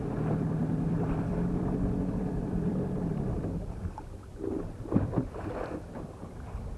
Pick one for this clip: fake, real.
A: real